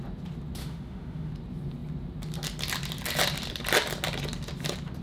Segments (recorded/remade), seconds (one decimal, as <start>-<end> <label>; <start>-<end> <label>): 0.0-0.6 recorded; 0.6-1.3 remade; 1.3-5.0 recorded